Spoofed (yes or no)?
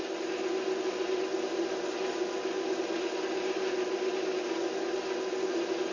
no